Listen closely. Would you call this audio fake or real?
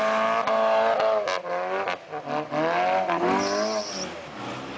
real